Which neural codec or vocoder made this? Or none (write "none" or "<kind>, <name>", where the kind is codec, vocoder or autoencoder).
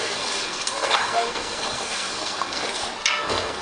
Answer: codec, SNAC